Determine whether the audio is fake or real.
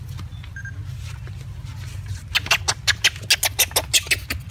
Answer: real